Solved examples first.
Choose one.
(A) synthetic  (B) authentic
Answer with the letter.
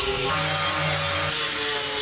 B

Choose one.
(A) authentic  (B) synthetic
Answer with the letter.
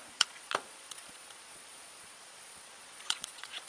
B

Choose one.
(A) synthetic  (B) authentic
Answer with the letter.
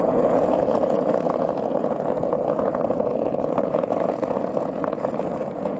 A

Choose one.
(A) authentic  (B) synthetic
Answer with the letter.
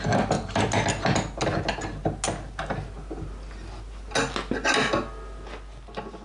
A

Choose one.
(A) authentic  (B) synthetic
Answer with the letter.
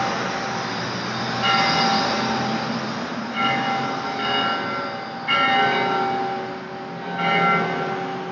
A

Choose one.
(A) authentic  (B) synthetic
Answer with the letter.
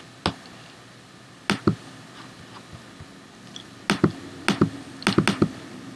A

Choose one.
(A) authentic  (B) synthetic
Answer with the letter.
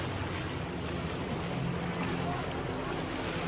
A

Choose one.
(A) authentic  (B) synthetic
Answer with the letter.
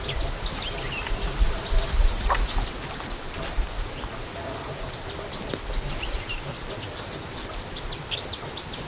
A